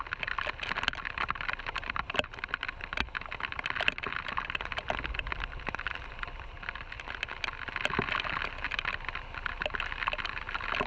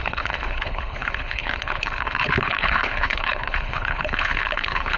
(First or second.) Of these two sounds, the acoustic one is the first